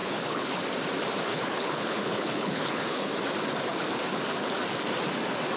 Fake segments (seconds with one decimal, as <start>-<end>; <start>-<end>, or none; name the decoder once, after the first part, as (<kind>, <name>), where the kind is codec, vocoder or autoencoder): 0.0-0.6 (codec, HILCodec); 1.3-3.1